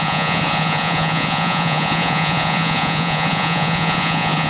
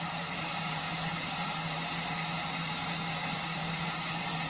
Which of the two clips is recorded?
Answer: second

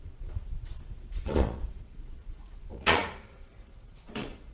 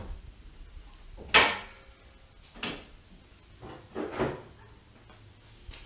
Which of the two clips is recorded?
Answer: second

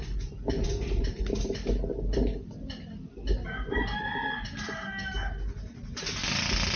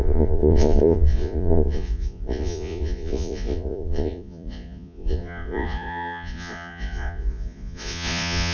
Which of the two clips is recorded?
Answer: first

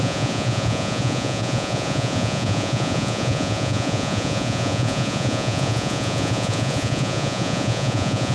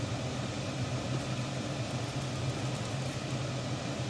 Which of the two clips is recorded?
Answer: second